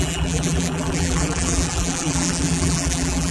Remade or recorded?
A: remade